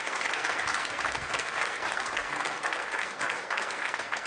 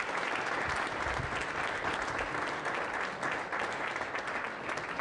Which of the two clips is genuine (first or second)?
second